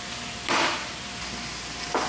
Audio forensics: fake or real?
real